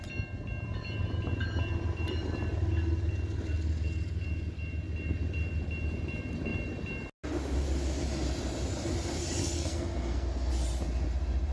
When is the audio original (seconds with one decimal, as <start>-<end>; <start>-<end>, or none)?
0.0-9.4; 10.5-11.5